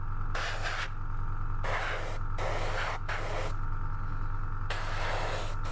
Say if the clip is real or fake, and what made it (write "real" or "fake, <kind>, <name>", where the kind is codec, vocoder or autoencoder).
real